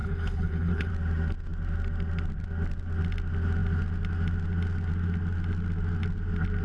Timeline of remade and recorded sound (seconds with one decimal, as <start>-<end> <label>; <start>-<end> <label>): 0.0-0.9 remade; 0.9-6.6 recorded